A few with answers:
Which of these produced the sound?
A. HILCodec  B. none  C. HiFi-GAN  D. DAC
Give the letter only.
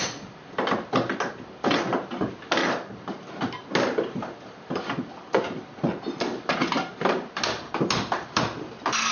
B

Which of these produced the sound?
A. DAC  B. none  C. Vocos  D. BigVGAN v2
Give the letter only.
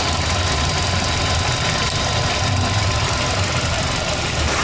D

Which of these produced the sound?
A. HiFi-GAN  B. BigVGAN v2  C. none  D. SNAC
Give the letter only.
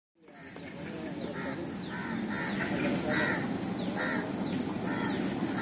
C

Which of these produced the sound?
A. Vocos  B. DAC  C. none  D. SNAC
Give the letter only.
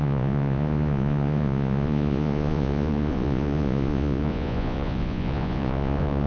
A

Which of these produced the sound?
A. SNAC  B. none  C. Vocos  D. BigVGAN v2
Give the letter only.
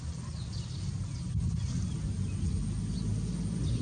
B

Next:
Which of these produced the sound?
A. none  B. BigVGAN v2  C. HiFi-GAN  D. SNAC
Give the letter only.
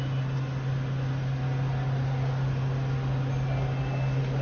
A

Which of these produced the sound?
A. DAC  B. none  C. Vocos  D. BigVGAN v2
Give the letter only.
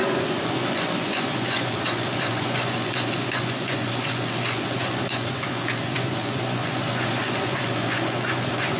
C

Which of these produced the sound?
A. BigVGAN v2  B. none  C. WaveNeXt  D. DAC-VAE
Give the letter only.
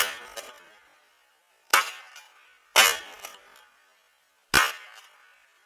B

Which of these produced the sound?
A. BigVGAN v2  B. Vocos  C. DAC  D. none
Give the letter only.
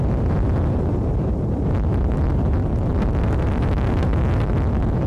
A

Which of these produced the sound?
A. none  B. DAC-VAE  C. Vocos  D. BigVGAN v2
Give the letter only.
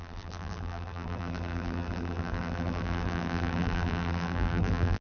D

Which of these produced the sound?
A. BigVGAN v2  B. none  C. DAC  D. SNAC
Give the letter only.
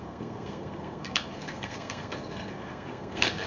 D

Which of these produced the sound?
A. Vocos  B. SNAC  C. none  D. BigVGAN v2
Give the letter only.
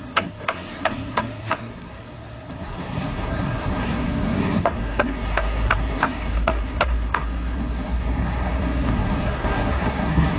B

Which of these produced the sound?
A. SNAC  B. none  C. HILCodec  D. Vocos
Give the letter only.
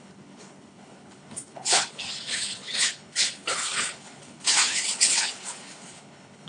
C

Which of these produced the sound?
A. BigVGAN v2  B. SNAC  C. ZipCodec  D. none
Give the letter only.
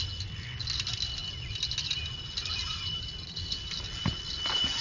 D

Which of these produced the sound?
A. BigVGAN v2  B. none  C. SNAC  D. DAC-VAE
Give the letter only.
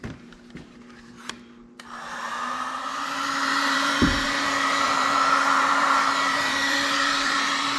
A